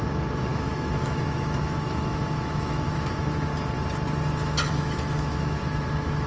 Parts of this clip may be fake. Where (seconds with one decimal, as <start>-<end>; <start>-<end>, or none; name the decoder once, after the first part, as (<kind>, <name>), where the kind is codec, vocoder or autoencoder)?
0.0-3.5 (autoencoder, DAC-VAE); 4.7-6.3